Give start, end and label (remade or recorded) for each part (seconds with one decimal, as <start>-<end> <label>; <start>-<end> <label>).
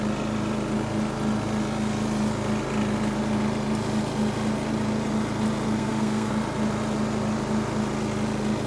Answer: 0.0-5.8 recorded; 5.8-6.3 remade; 6.3-8.7 recorded